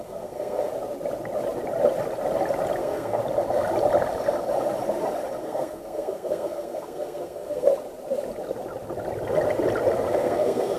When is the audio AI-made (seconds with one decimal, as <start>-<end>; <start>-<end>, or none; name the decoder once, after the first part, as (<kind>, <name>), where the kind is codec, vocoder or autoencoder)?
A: 0.0-0.7 (codec, SNAC); 2.8-3.2; 5.4-7.7; 10.1-10.8